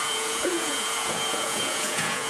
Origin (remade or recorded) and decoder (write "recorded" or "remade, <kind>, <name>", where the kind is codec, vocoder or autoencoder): remade, vocoder, Vocos